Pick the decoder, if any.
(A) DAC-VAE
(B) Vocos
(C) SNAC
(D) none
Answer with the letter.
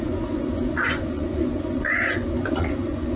B